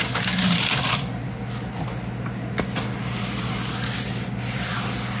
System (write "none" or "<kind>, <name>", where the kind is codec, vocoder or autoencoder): none